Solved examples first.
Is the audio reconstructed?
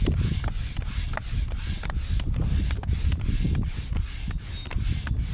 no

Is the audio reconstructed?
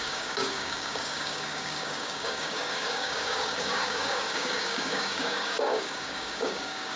yes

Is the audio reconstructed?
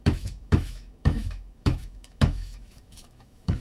yes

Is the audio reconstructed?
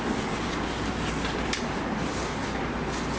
no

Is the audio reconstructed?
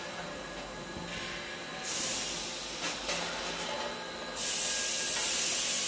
no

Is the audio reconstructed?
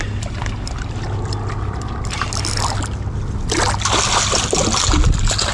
no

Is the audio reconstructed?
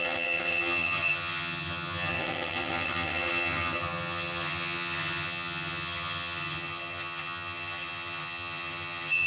yes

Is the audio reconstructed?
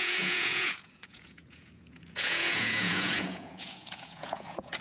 yes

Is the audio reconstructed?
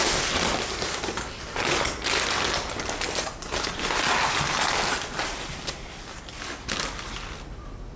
no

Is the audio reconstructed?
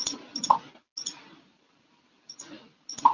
no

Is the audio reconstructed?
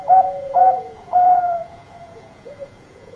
yes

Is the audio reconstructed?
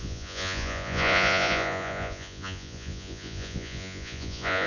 yes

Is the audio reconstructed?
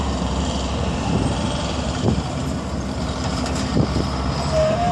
yes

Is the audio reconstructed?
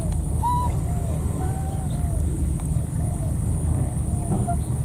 yes